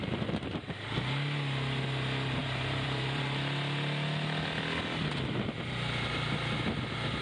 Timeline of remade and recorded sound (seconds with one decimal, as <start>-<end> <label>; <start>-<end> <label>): 0.0-2.4 recorded; 2.4-3.2 remade; 3.2-7.2 recorded